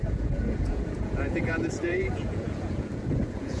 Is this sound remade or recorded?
remade